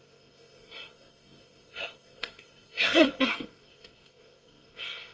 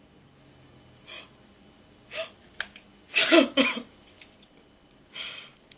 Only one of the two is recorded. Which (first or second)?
second